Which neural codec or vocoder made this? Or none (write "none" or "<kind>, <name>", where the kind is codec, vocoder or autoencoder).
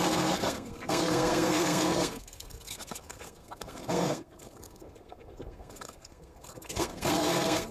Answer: codec, SNAC